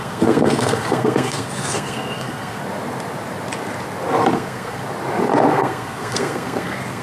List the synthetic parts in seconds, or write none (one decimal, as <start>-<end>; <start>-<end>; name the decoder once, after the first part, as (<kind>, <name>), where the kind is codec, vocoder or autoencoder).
0.0-2.6 (codec, SNAC); 4.3-4.8; 5.5-7.0